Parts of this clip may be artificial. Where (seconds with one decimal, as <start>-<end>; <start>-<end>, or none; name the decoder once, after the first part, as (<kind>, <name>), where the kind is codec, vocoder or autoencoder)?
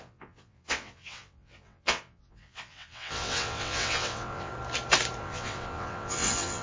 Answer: 0.0-4.5 (vocoder, WaveNeXt); 5.2-6.6